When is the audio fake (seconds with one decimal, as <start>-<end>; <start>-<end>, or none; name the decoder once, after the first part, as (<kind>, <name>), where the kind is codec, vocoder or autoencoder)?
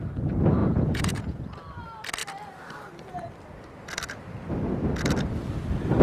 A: 0.6-1.4 (vocoder, Vocos)